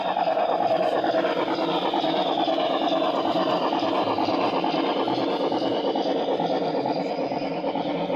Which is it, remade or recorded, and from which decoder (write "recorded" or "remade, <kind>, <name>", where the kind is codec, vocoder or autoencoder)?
remade, vocoder, BigVGAN v2